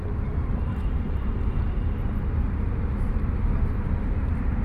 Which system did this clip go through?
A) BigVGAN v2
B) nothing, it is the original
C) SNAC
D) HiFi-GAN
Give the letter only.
A